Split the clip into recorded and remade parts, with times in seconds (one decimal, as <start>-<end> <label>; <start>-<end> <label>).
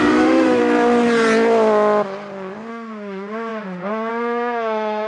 0.0-0.6 remade; 0.6-2.7 recorded; 2.7-5.1 remade